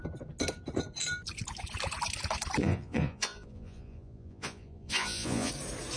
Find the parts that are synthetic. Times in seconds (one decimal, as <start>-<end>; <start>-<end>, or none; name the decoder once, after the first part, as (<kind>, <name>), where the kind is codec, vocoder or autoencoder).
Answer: 2.6-5.5 (vocoder, Vocos)